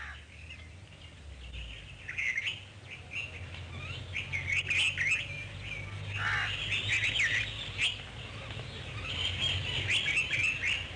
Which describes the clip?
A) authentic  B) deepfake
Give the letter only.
A